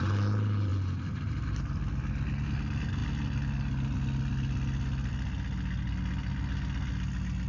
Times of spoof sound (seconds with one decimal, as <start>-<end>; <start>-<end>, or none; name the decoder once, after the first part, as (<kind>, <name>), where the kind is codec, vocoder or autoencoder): 0.7-2.4 (vocoder, BigVGAN v2)